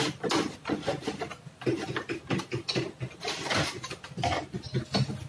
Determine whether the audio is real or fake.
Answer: real